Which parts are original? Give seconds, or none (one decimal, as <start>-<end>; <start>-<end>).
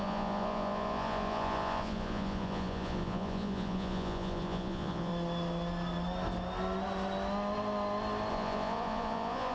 5.1-8.3